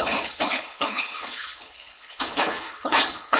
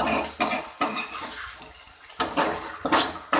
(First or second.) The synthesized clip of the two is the first